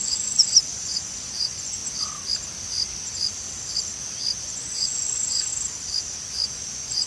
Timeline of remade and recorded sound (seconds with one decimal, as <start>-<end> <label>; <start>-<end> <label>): 0.0-1.8 remade; 1.8-4.4 recorded; 4.4-5.5 remade; 5.5-6.3 recorded; 6.3-7.1 remade